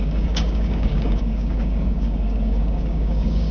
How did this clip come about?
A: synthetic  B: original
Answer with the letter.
A